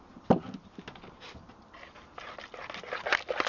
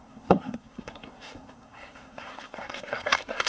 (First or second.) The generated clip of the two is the second